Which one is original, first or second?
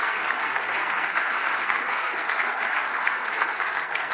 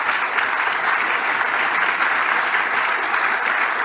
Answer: second